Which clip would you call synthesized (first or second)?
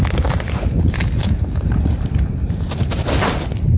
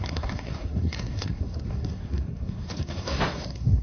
second